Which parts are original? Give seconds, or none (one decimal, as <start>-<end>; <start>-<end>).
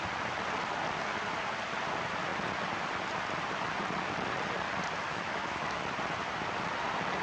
0.0-5.1; 5.8-7.2